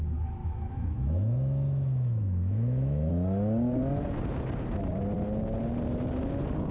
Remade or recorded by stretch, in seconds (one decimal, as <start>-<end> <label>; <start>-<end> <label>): 0.0-0.4 recorded; 0.4-3.1 remade; 3.1-6.7 recorded